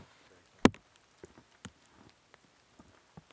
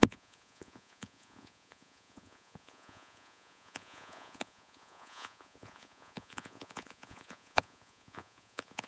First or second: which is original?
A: first